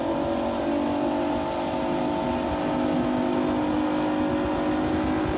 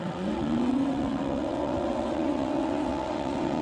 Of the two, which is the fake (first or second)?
second